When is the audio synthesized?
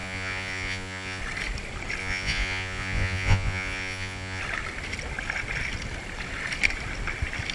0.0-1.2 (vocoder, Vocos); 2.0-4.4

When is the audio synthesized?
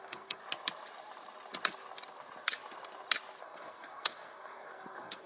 0.0-0.4 (codec, SNAC); 3.4-5.3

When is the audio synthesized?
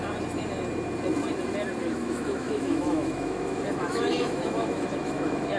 1.8-5.6 (autoencoder, DAC-VAE)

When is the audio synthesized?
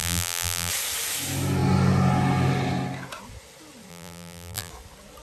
0.0-0.7 (vocoder, BigVGAN v2); 3.9-4.7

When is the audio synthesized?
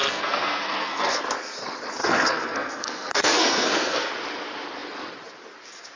0.0-1.2 (codec, SNAC); 2.0-4.1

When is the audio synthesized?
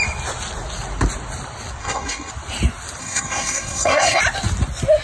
1.8-2.3 (codec, SNAC); 3.0-4.2